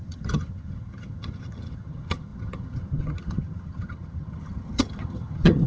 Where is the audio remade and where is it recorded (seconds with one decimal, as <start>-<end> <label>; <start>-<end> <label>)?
0.0-5.7 remade